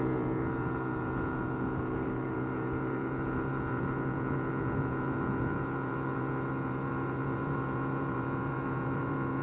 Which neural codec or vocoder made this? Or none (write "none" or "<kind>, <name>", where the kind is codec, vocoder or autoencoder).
vocoder, Vocos